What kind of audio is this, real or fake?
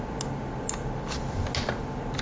real